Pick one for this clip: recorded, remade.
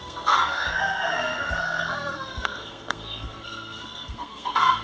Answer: remade